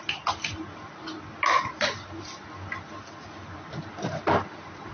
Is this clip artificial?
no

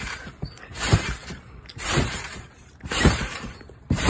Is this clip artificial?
yes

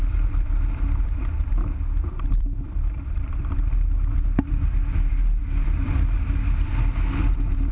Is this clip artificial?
yes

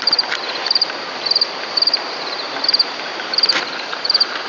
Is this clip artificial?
yes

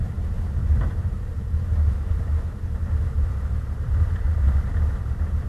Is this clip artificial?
yes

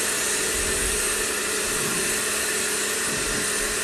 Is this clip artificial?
no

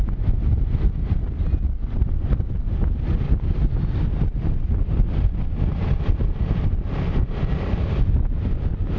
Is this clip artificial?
no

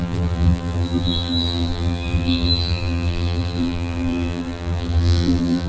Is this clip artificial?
yes